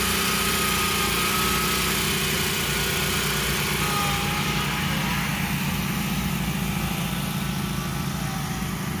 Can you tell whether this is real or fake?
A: real